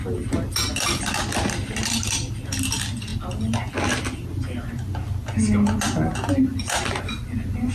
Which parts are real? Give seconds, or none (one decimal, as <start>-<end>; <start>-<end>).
0.0-7.7